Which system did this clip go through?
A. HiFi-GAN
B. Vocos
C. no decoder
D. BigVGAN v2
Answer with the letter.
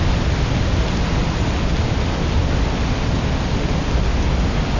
C